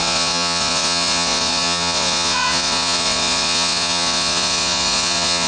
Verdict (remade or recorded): remade